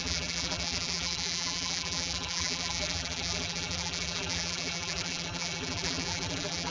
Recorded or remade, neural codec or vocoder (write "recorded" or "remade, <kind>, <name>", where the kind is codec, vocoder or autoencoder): remade, vocoder, BigVGAN v2